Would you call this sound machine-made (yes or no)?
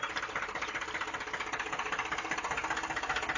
no